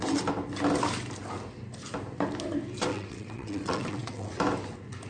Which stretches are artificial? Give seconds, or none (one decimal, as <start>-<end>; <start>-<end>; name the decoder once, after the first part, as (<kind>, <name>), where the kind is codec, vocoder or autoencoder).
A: 2.9-4.4 (vocoder, WaveNeXt)